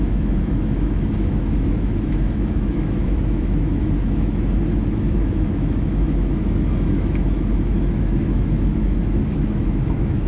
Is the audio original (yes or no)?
no